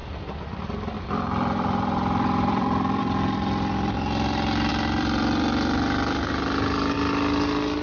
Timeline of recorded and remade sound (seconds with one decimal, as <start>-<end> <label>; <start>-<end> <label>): 0.0-3.0 remade; 3.0-4.7 recorded; 4.7-6.3 remade; 6.3-7.8 recorded